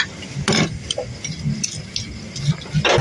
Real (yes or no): yes